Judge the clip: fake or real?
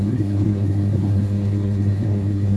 fake